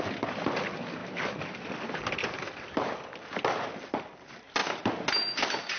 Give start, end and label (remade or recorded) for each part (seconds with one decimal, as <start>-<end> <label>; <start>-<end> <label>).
0.0-5.8 recorded